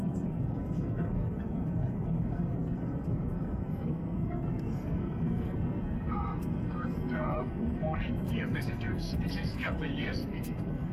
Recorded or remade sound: remade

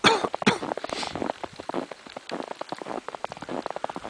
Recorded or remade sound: recorded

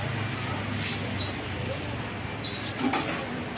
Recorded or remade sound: recorded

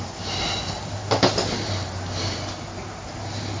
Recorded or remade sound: recorded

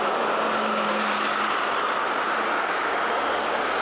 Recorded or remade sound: recorded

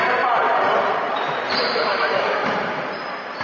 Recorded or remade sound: remade